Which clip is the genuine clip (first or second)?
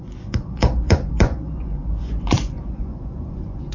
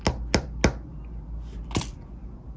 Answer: second